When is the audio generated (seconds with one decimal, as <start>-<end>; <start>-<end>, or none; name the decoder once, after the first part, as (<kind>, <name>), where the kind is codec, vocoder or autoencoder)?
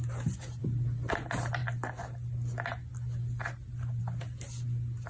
none